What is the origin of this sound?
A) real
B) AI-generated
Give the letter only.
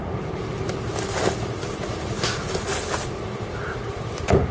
A